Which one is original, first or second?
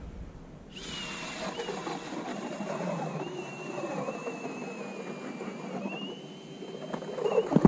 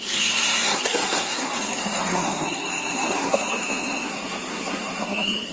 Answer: first